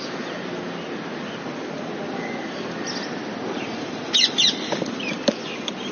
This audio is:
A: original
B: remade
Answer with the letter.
A